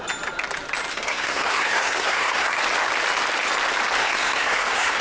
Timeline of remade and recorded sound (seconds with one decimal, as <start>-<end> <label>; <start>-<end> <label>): 0.0-0.9 recorded; 0.9-2.6 remade; 2.6-4.0 recorded; 4.0-5.0 remade